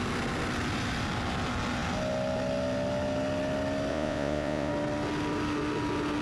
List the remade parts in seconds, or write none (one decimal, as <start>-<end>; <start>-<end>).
3.9-4.7